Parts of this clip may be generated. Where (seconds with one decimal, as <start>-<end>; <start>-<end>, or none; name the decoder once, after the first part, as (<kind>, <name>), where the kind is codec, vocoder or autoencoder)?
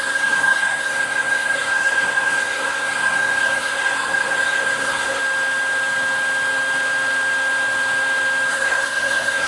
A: 0.0-5.2 (codec, SNAC); 8.5-9.5